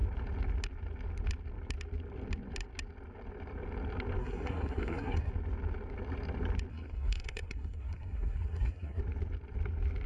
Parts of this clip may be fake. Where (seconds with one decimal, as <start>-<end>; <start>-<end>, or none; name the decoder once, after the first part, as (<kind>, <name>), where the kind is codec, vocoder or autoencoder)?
4.2-5.3 (codec, SNAC); 6.7-9.0